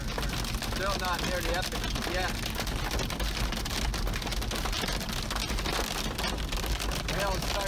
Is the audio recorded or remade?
recorded